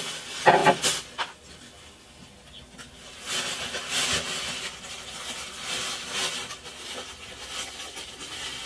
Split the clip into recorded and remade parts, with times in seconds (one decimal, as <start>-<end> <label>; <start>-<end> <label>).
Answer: 0.0-8.7 recorded